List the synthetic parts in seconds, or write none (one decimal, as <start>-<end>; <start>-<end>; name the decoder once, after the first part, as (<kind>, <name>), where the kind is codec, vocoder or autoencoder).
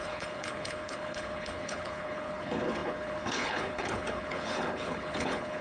0.0-5.6 (codec, HILCodec)